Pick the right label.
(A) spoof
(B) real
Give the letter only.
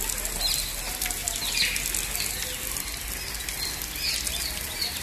B